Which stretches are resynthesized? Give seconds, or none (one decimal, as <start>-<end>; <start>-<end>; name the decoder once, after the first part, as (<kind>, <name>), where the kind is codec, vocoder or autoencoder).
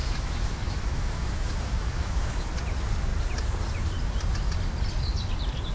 0.0-2.5 (autoencoder, DAC-VAE)